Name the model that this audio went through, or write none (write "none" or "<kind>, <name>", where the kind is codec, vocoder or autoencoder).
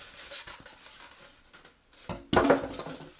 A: none